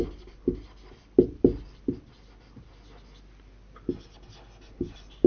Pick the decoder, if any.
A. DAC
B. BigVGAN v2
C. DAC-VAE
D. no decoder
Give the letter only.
D